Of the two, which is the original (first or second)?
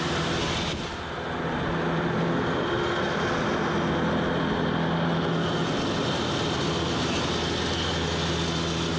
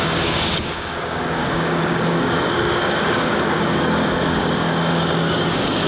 first